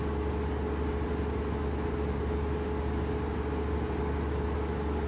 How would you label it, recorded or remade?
recorded